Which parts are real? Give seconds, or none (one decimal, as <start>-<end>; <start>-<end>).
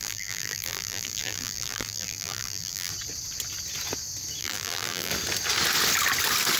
2.9-4.4; 5.1-6.6